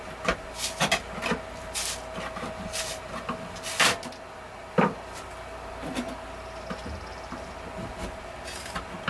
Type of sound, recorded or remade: recorded